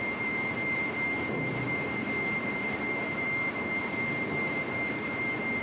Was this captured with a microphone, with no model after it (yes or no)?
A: no